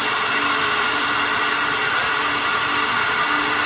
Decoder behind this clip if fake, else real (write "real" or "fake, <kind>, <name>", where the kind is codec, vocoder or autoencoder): real